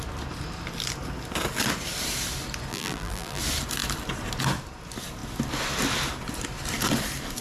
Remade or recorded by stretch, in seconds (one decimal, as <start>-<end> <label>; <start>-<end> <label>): 0.0-2.7 recorded; 2.7-3.4 remade; 3.4-7.4 recorded